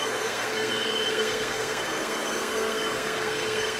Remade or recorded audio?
remade